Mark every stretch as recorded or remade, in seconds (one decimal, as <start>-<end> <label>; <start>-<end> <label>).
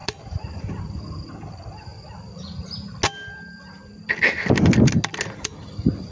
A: 0.0-6.1 recorded